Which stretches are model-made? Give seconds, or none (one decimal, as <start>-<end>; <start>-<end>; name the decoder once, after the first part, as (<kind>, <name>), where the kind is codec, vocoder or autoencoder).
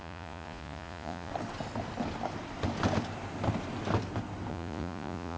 0.0-1.3 (vocoder, Vocos); 4.5-5.4